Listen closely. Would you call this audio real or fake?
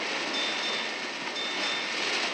real